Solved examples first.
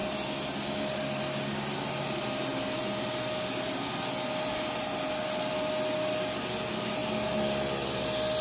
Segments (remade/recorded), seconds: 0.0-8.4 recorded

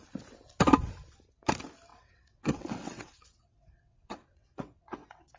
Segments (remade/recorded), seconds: 0.0-1.9 recorded; 1.9-5.4 remade

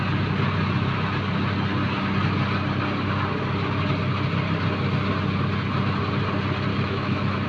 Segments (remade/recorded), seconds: 0.0-6.7 recorded; 6.7-7.5 remade

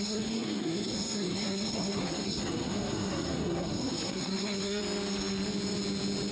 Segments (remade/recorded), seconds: 0.0-4.8 remade; 4.8-6.3 recorded

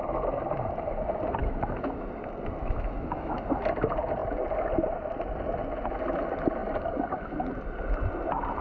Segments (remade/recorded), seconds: 0.0-1.4 recorded; 1.4-2.1 remade; 2.1-2.6 recorded; 2.6-3.3 remade; 3.3-8.6 recorded